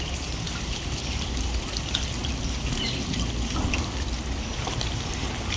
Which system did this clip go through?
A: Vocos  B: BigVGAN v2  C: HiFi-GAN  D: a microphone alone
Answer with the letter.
D